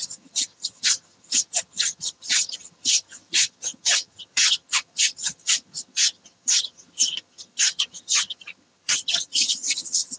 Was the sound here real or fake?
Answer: fake